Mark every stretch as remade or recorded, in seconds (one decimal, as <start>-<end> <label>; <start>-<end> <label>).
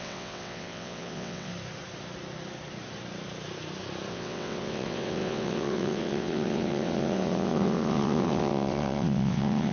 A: 0.0-1.5 remade; 1.5-4.1 recorded; 4.1-9.7 remade